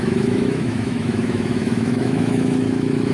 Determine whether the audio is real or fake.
fake